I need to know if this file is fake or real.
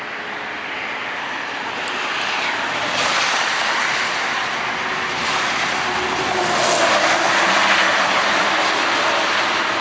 real